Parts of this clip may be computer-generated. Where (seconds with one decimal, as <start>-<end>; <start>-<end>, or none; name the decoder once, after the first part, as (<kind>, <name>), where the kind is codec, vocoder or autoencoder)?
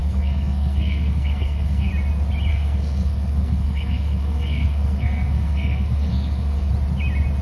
0.0-1.9 (codec, SNAC); 2.5-6.7